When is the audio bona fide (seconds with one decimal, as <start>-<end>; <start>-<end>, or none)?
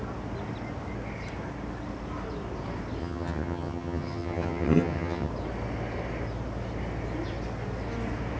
0.0-3.0; 5.3-8.4